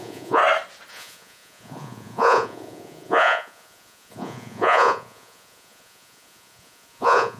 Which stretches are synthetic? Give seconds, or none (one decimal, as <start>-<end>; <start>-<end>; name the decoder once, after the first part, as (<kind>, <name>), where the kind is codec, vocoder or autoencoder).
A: 0.0-0.4 (vocoder, Vocos); 0.9-7.4